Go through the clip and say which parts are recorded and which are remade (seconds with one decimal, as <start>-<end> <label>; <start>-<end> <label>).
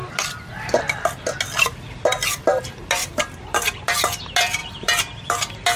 0.0-3.0 recorded; 3.0-3.8 remade; 3.8-4.6 recorded; 4.6-5.2 remade; 5.2-5.8 recorded